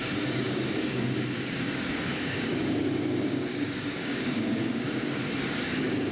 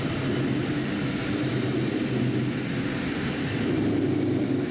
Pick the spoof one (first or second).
first